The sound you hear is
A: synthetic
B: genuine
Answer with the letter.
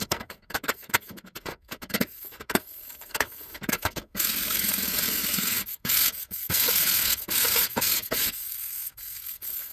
A